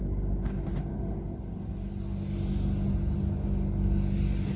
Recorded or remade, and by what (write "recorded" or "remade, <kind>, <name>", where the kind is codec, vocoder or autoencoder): recorded